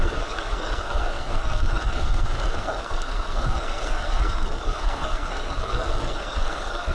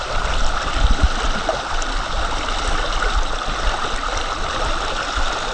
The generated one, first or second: first